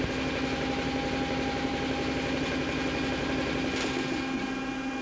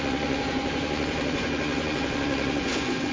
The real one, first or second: first